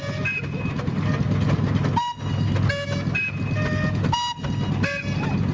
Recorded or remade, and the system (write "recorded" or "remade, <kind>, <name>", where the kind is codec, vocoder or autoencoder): recorded